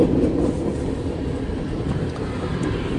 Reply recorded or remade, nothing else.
remade